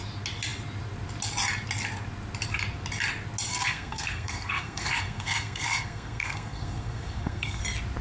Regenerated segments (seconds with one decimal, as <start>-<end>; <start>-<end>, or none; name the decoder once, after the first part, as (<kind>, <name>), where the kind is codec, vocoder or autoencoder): 3.5-7.6 (codec, SNAC)